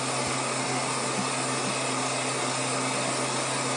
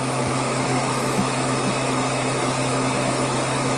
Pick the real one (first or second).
first